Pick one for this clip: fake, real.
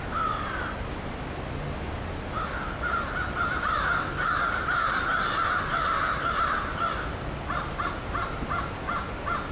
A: real